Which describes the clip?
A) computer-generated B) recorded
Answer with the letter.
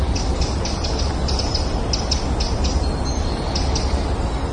B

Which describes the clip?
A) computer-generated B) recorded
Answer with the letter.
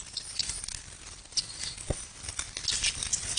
B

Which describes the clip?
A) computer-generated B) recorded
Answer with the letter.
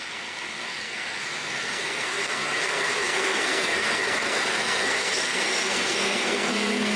A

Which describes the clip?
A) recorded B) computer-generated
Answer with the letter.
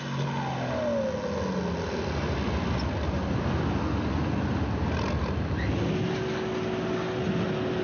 A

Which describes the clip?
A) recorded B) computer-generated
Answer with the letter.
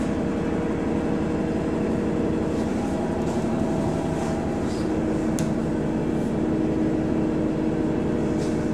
A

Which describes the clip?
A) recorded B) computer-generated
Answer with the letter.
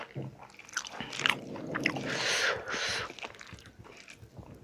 A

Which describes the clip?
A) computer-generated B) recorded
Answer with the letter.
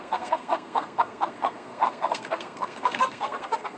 A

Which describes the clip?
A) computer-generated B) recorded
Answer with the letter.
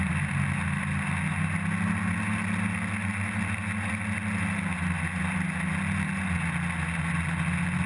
B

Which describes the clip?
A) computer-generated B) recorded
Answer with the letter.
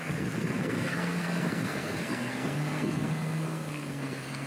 A